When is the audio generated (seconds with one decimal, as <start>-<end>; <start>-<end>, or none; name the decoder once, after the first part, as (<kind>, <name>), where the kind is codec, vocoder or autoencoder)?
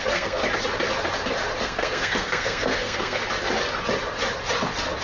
0.0-0.4 (codec, SNAC); 1.6-3.2